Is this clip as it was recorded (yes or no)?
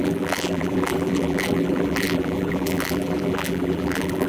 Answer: no